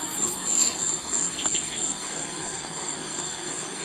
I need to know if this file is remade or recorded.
remade